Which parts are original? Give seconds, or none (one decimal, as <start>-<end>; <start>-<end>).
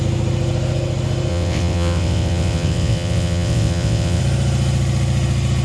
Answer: 0.0-1.3; 4.2-5.6